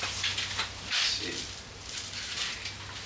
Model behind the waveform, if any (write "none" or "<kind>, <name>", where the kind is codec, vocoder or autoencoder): none